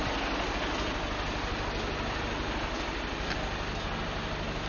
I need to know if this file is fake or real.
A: real